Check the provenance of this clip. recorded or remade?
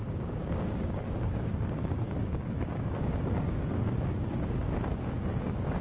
remade